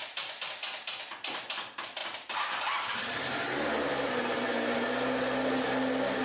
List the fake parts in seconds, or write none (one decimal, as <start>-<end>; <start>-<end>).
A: none